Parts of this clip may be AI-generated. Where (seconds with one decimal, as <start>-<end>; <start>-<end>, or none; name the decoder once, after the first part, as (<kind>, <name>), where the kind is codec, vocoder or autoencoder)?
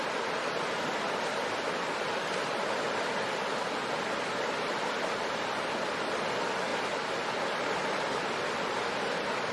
none